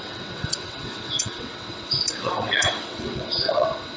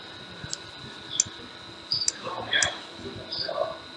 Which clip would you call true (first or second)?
second